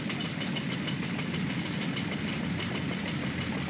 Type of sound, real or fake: real